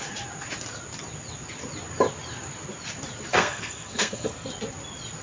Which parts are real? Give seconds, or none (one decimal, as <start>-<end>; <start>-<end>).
0.0-3.3; 4.5-5.2